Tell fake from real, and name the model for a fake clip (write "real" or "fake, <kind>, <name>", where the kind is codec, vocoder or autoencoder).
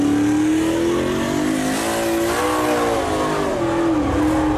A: real